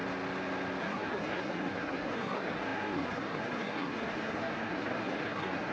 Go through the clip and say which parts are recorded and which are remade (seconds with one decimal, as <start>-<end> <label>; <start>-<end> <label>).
0.0-0.8 recorded; 0.8-5.7 remade